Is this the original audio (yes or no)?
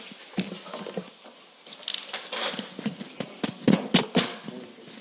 yes